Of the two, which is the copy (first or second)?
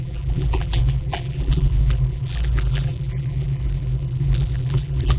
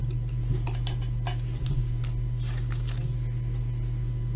first